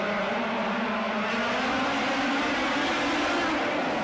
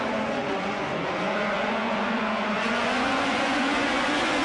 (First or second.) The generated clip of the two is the second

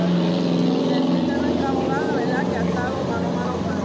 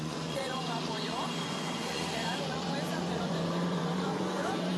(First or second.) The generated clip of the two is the second